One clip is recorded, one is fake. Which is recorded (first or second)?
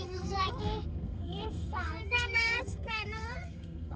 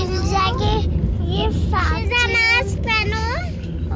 second